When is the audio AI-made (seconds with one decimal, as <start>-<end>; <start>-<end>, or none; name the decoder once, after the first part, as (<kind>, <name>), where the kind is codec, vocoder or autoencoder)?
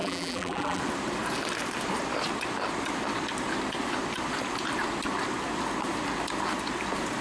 0.0-0.8 (vocoder, BigVGAN v2)